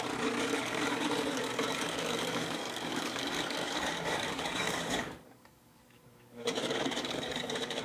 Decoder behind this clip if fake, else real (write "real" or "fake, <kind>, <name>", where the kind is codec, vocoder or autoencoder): fake, codec, DAC